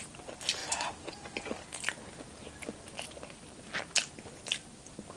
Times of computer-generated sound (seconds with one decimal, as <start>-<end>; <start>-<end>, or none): none